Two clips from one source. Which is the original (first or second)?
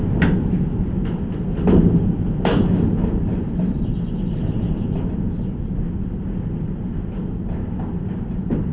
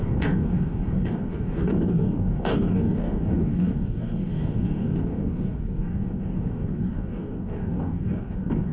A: first